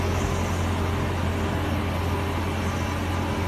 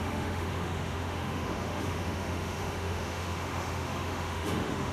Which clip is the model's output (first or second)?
second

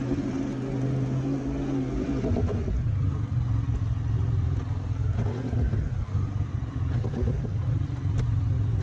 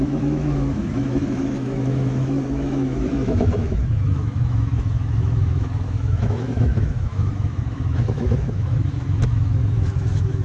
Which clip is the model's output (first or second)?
second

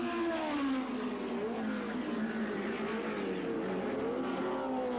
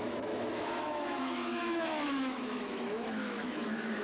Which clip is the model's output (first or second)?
second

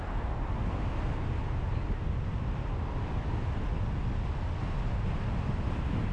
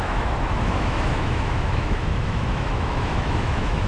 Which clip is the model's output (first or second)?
second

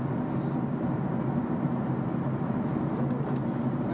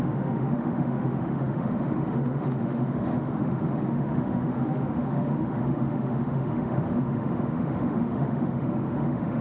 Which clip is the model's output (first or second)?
second